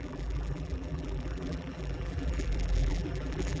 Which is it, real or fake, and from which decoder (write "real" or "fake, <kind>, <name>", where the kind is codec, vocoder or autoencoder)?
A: fake, vocoder, BigVGAN v2